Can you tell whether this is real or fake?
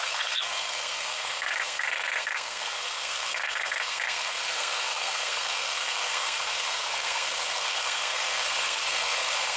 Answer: fake